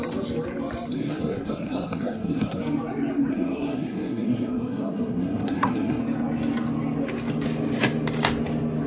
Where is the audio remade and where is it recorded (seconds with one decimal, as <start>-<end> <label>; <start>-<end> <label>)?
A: 0.0-0.9 recorded; 0.9-2.6 remade; 2.6-3.3 recorded; 3.3-6.0 remade; 6.0-8.9 recorded